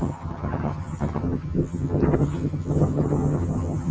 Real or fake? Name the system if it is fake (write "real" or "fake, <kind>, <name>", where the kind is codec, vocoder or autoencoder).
fake, vocoder, HiFi-GAN